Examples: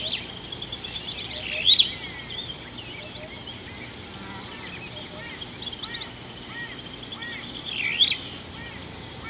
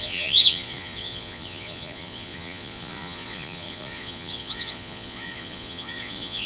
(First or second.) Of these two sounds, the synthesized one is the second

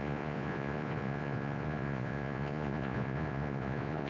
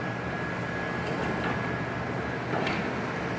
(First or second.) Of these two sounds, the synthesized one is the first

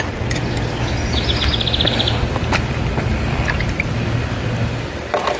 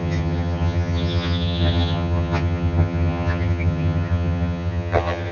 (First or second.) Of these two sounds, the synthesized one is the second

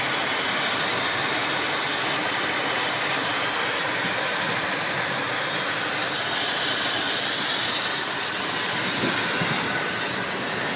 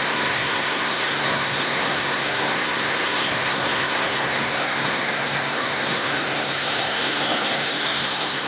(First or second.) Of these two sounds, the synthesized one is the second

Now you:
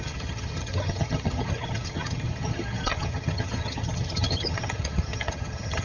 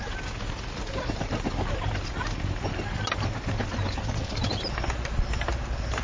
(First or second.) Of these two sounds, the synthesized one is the first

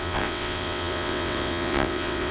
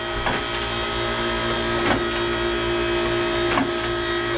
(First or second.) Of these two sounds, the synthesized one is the first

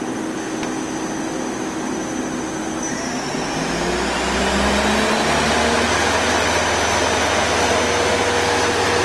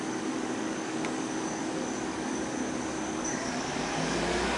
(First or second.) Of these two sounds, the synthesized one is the second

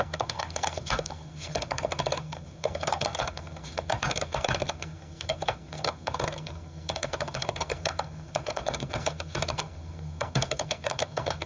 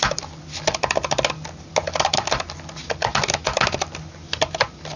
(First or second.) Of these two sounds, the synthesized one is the first